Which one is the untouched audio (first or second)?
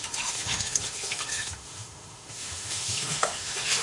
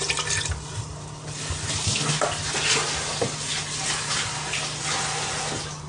second